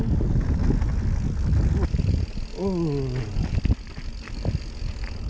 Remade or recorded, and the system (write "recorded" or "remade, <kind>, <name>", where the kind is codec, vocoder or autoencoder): recorded